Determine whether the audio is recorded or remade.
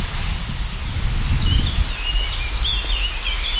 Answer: recorded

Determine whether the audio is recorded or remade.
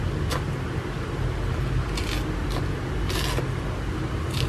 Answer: recorded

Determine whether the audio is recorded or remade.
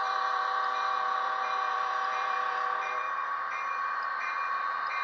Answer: remade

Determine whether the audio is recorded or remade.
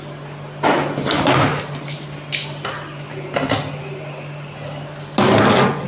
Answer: recorded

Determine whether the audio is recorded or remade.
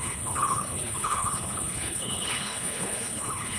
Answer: remade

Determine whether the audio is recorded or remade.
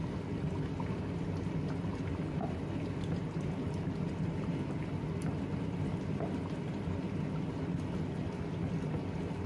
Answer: recorded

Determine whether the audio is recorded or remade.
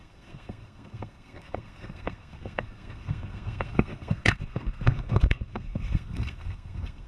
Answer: remade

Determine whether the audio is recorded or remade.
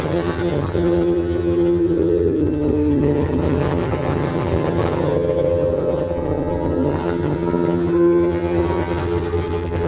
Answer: remade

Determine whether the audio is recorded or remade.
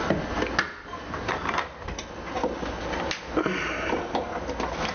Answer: recorded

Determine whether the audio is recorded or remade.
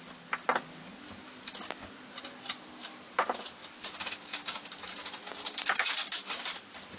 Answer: recorded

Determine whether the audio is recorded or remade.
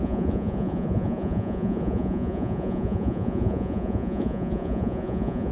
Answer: remade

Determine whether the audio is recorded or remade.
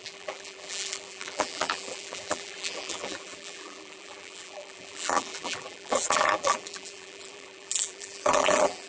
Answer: remade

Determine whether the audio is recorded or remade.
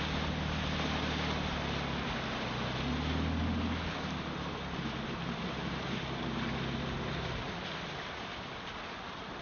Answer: recorded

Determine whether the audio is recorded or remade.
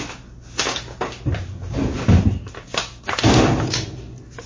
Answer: recorded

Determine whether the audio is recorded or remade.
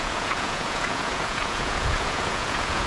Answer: remade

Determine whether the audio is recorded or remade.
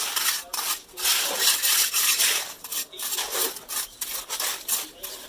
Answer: recorded